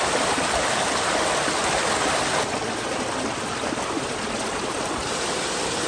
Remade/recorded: remade